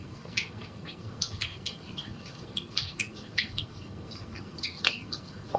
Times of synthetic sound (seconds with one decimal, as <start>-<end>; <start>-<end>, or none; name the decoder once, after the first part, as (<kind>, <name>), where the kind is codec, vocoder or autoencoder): 0.0-5.6 (codec, SNAC)